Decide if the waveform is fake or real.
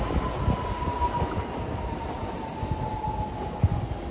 real